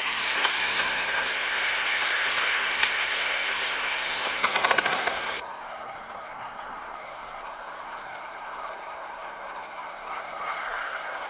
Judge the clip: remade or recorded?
remade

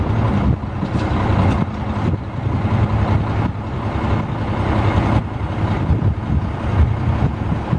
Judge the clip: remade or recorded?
recorded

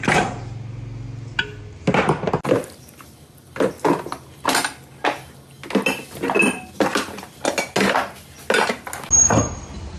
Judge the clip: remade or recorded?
recorded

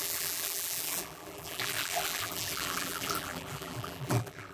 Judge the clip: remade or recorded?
remade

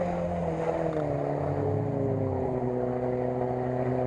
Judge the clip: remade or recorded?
recorded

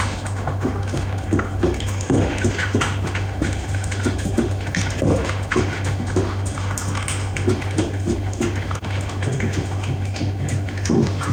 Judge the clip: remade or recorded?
remade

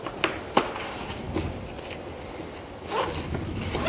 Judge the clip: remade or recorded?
recorded